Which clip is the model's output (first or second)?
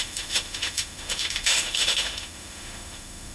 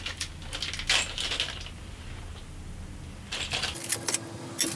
first